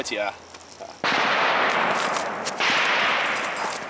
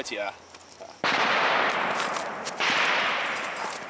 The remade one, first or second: second